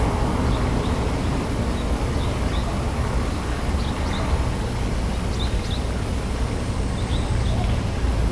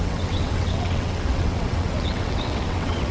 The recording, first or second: first